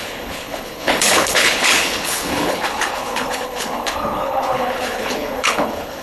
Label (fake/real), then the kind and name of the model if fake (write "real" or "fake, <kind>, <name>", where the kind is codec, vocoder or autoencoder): fake, codec, HILCodec